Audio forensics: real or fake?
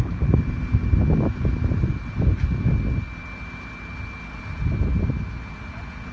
real